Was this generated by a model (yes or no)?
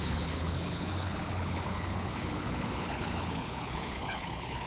yes